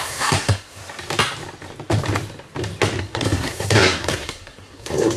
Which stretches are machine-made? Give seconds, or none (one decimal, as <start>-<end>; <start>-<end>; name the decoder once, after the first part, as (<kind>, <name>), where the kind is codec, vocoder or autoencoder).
0.0-0.8 (codec, SNAC); 3.0-5.2

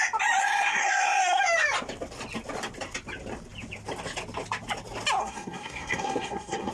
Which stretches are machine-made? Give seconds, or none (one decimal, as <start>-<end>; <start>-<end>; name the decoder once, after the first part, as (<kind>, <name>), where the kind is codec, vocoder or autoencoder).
0.4-1.4 (codec, SNAC); 5.2-6.7